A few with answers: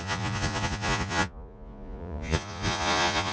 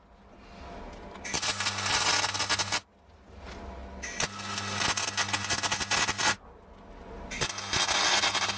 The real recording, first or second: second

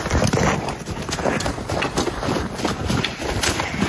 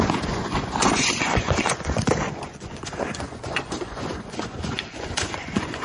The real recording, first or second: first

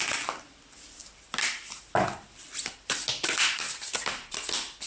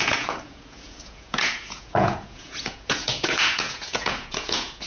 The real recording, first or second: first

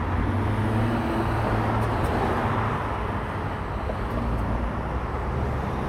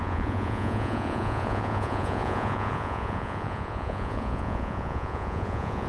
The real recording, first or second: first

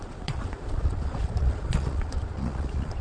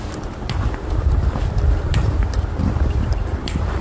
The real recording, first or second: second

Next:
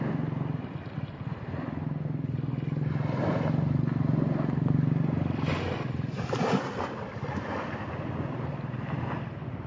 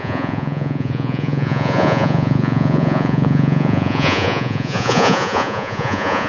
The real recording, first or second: first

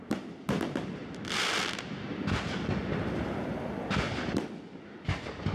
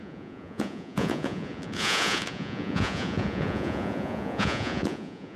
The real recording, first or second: first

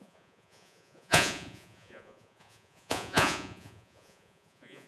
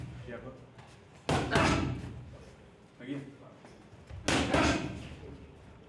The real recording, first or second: second